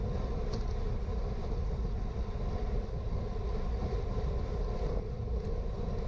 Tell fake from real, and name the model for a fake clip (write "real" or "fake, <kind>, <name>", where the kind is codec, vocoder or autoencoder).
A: real